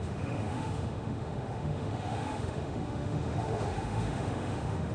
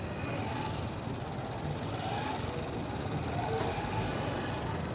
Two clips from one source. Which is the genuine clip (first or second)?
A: second